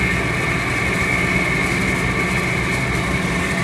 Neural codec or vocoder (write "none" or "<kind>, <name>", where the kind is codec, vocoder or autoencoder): none